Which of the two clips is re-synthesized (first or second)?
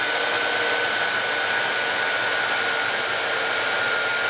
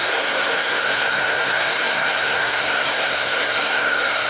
second